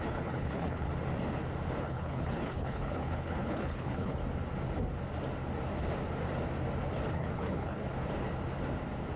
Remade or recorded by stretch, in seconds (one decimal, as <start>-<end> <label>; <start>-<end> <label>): 0.0-0.9 remade; 0.9-1.8 recorded; 1.8-4.2 remade; 4.2-7.1 recorded; 7.1-7.8 remade; 7.8-9.2 recorded